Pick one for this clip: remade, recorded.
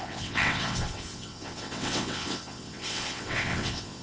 remade